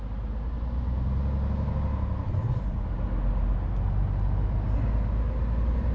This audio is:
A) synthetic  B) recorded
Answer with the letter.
B